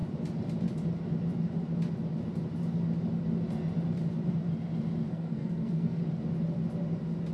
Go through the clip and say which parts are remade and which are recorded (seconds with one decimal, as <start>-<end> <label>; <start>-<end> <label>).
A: 0.0-5.1 recorded; 5.1-6.0 remade; 6.0-7.3 recorded